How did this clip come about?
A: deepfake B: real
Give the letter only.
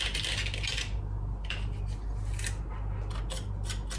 B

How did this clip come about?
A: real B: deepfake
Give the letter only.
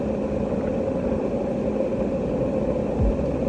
A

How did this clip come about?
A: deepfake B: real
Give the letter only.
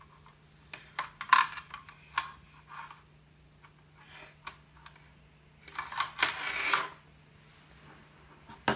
B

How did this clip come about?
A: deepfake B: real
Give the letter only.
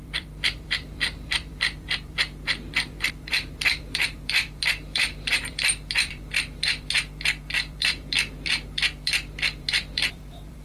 A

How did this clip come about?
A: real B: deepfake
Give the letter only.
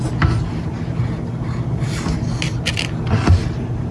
A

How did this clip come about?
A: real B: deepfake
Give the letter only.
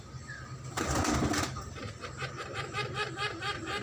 B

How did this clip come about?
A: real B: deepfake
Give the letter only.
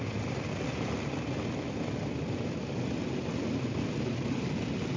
A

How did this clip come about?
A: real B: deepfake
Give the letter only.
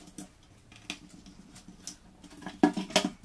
A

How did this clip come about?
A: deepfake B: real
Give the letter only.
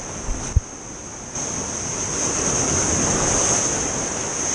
B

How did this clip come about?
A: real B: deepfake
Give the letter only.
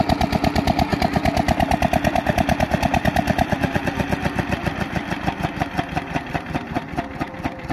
B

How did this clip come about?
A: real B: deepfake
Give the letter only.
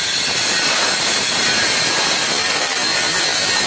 B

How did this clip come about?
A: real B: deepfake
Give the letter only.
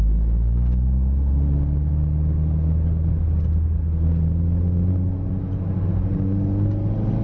A